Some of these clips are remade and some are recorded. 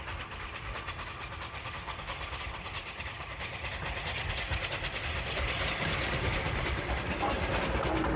recorded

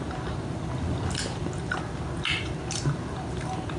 recorded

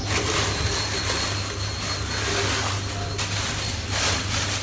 recorded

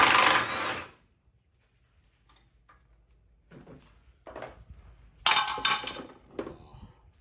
recorded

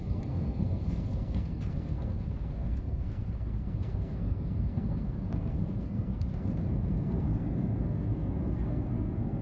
remade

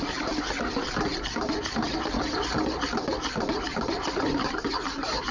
recorded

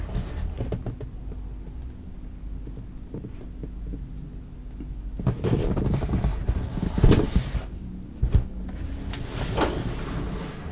recorded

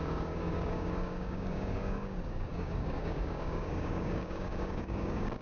remade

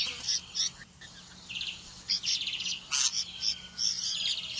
recorded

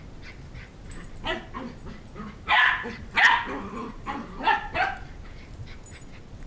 recorded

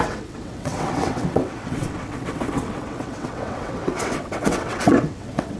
remade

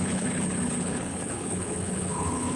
remade